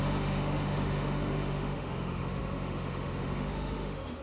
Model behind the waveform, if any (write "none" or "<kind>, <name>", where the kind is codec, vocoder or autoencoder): autoencoder, DAC-VAE